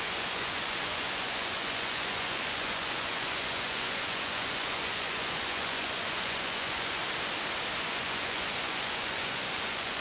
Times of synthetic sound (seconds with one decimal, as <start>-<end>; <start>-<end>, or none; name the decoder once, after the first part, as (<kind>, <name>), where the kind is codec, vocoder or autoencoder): 0.0-7.0 (vocoder, Vocos); 7.8-10.0